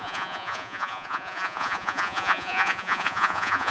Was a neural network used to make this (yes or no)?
yes